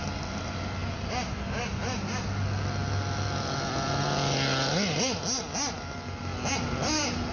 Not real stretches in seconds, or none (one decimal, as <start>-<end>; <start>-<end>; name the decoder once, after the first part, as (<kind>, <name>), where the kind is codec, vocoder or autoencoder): none

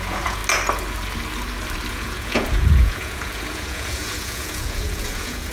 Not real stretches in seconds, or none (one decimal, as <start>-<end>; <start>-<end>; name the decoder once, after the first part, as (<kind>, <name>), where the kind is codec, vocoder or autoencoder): 0.0-0.4 (vocoder, Vocos); 1.9-5.5

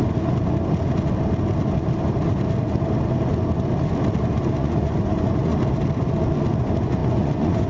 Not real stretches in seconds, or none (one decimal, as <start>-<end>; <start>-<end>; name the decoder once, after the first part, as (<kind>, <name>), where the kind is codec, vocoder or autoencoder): 4.3-5.5 (vocoder, Vocos); 6.6-7.7

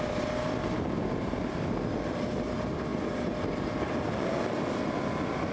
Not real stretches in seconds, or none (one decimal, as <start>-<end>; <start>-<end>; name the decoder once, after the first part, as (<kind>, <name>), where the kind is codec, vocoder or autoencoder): none

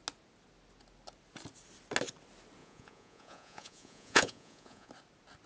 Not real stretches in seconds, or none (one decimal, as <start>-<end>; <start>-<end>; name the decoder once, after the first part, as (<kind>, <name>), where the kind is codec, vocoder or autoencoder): 2.6-4.9 (vocoder, Vocos)